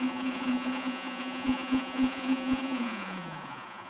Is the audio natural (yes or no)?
no